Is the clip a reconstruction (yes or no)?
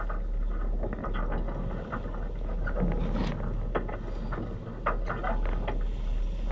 no